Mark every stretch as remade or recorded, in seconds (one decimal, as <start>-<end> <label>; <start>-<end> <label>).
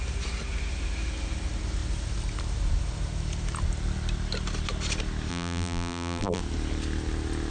0.0-5.3 recorded; 5.3-6.4 remade; 6.4-7.5 recorded